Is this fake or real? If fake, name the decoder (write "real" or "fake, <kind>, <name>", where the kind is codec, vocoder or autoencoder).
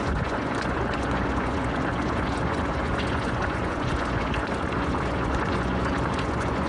fake, vocoder, Vocos